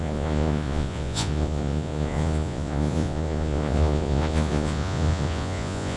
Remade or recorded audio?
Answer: remade